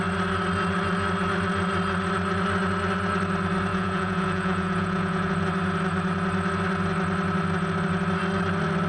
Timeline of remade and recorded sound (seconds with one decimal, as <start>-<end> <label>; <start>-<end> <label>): 0.0-3.7 recorded; 3.7-5.3 remade; 5.3-8.9 recorded